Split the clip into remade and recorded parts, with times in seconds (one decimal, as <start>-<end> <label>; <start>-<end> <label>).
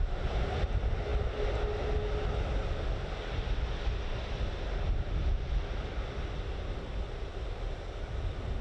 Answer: 0.0-8.6 recorded